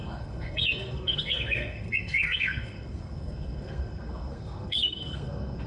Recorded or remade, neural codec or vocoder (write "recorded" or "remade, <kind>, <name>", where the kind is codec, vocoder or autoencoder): remade, codec, SNAC